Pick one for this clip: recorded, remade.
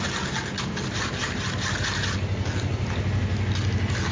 recorded